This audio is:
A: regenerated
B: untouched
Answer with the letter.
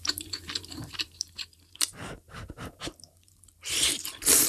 A